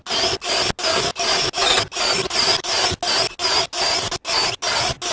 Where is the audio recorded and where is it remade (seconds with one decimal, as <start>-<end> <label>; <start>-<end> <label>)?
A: 0.0-1.1 recorded; 1.1-3.1 remade; 3.1-5.1 recorded